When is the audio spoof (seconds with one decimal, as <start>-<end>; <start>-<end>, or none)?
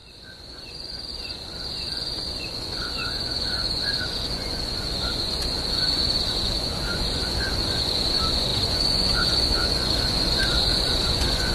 0.0-11.5